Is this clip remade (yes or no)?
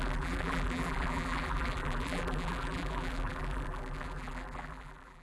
yes